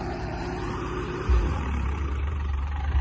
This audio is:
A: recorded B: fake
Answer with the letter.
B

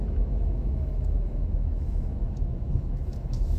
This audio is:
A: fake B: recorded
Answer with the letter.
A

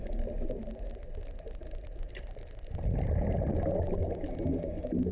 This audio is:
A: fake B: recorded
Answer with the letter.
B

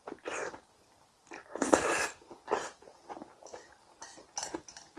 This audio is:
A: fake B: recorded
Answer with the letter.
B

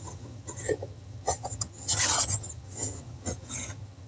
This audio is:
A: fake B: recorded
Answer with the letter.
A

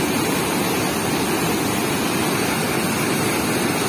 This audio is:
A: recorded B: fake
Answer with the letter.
A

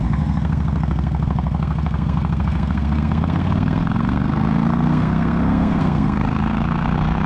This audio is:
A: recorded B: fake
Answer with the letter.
B